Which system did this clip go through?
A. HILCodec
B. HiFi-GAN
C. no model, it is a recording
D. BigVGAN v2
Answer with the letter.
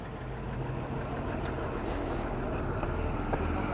C